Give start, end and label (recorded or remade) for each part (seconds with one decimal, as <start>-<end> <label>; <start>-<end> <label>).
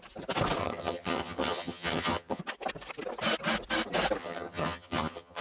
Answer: 0.0-0.6 recorded; 0.6-2.4 remade; 2.4-4.2 recorded; 4.2-5.4 remade